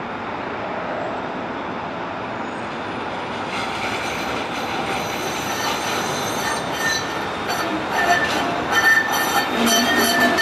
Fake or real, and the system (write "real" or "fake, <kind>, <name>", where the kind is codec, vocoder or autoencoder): real